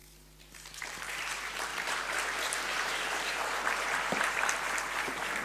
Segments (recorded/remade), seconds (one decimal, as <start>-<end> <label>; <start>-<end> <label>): 0.0-0.8 recorded; 0.8-5.4 remade